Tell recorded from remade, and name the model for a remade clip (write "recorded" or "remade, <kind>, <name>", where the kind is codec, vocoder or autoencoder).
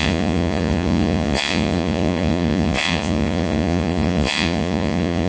remade, vocoder, Vocos